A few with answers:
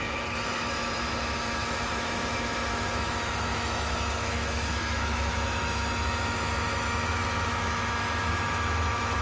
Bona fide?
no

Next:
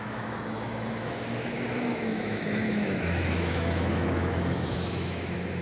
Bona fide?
no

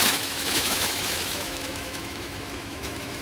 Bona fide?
no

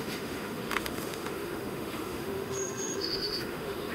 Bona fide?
no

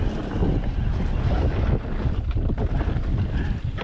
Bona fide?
yes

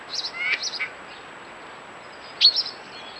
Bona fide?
yes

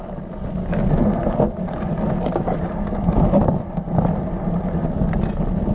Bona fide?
yes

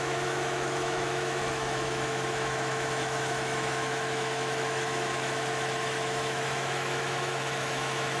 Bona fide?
no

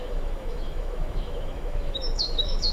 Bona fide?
no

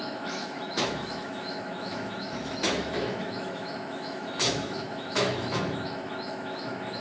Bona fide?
no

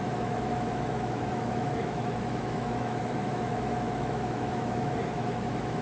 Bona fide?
no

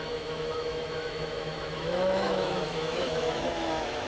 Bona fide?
no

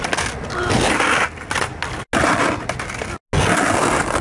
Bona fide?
yes